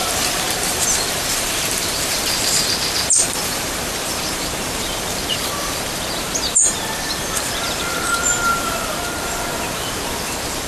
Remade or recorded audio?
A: remade